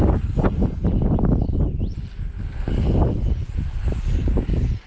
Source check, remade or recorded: recorded